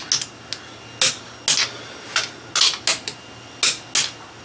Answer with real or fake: real